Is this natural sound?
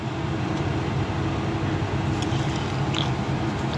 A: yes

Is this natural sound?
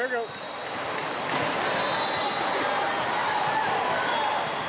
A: yes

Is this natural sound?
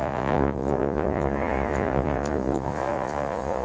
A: no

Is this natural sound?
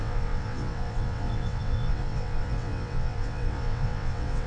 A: no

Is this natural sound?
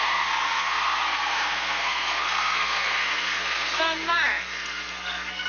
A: no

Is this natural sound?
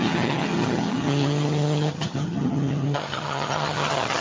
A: no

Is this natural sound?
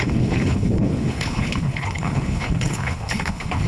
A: no